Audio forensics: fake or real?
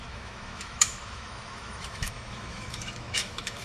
fake